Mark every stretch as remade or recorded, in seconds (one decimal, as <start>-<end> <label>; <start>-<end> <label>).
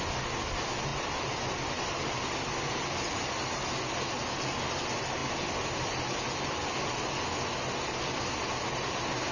0.0-9.3 recorded